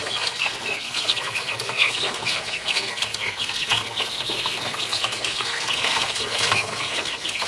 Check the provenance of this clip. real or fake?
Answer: fake